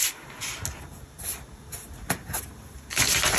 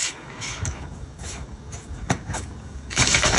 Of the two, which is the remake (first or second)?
second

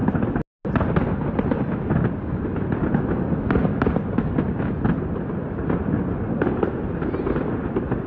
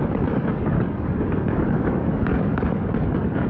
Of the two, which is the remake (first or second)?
second